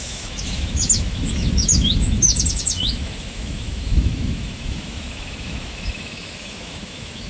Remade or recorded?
remade